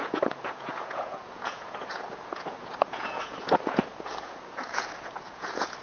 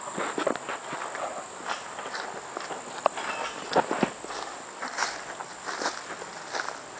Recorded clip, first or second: second